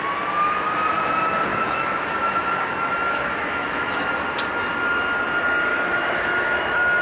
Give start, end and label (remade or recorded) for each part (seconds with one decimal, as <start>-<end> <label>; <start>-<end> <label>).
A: 0.0-1.5 recorded; 1.5-4.1 remade; 4.1-5.7 recorded; 5.7-7.0 remade